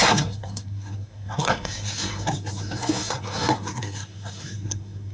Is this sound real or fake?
fake